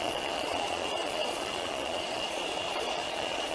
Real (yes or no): no